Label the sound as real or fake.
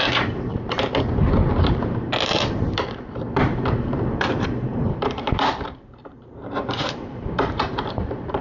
fake